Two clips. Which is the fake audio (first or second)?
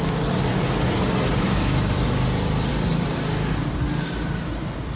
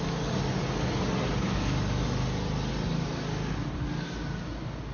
first